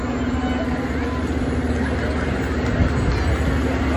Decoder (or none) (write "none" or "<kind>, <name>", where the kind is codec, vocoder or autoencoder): none